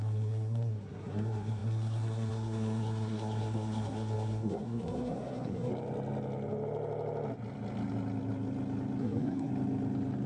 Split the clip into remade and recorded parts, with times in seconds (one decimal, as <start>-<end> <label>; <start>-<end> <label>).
0.0-5.7 remade; 5.7-9.0 recorded; 9.0-9.5 remade; 9.5-10.3 recorded